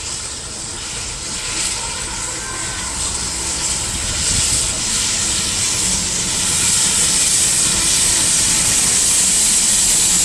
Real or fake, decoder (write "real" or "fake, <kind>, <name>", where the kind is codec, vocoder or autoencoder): real